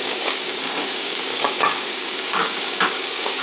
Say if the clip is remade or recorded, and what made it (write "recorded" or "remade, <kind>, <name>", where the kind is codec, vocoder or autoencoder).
remade, codec, DAC